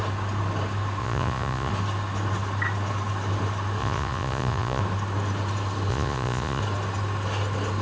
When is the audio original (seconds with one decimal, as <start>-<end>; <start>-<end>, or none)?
0.0-1.0; 1.7-3.8; 4.8-5.9; 6.6-7.8

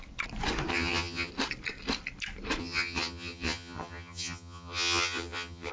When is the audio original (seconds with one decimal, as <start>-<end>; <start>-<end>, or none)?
0.0-0.7; 1.3-2.6

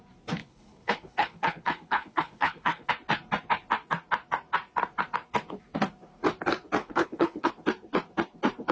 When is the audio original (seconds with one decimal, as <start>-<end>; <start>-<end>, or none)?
0.0-0.4; 2.9-6.8; 7.5-8.7

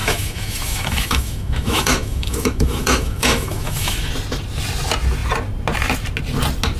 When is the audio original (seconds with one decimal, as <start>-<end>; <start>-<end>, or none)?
4.1-6.8